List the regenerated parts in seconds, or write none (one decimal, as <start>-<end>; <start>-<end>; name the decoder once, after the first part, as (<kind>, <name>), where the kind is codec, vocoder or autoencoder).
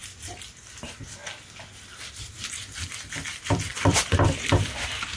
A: 0.0-1.2 (vocoder, BigVGAN v2); 2.1-5.2